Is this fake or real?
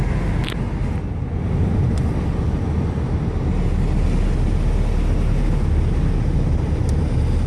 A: real